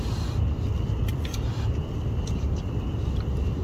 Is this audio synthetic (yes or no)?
no